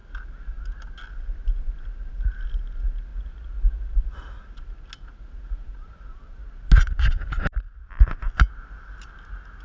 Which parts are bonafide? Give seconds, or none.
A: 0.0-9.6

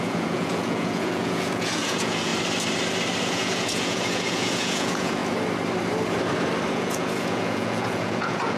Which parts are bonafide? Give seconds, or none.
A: 2.3-3.2; 5.2-6.7